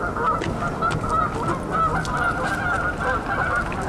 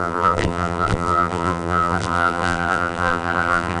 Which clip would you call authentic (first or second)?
first